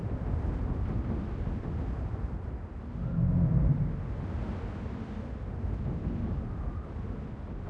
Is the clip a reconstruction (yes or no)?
no